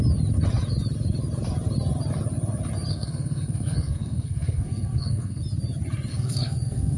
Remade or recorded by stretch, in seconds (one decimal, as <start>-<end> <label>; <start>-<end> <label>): 0.0-2.9 recorded; 2.9-5.4 remade; 5.4-6.1 recorded; 6.1-7.0 remade